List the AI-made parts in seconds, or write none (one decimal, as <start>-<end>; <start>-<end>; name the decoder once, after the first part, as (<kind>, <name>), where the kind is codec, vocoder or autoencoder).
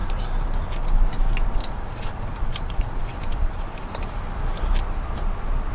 1.6-4.2 (vocoder, BigVGAN v2)